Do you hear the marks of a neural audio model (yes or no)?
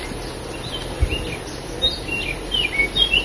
no